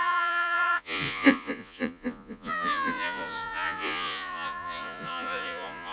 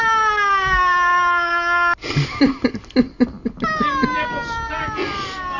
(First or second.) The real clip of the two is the second